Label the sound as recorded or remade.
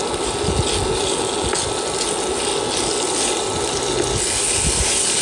recorded